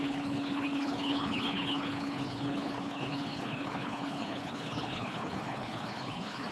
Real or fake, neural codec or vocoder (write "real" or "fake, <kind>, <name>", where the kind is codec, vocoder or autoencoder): fake, codec, HILCodec